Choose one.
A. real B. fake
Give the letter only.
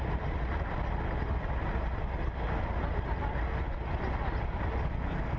A